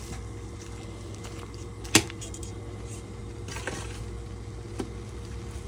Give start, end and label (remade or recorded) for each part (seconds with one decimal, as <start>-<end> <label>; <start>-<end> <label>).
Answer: 0.0-5.7 recorded